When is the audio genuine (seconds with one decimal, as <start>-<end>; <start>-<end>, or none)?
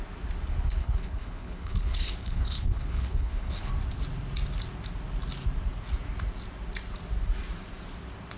0.0-0.8; 3.7-8.4